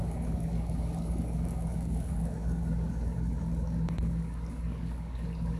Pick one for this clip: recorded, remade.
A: remade